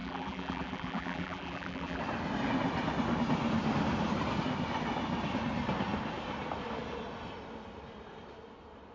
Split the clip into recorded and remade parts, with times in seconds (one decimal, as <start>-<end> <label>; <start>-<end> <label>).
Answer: 0.0-2.0 remade; 2.0-8.9 recorded